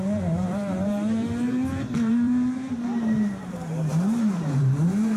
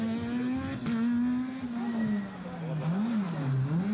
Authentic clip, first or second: second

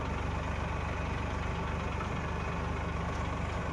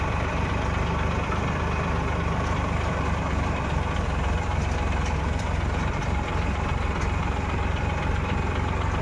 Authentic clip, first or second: first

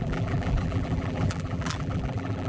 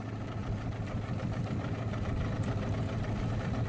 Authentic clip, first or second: second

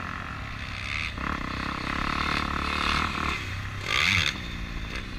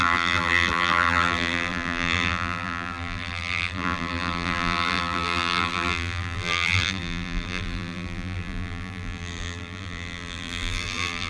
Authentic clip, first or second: first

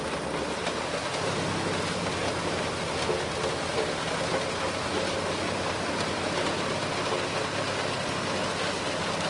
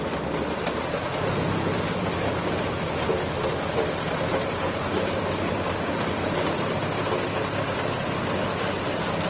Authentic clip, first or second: first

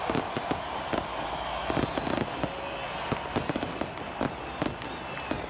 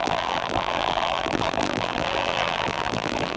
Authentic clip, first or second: first